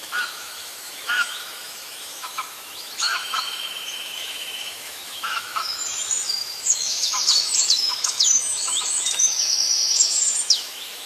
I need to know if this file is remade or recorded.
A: remade